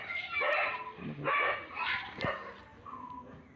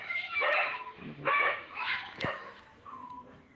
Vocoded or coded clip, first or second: second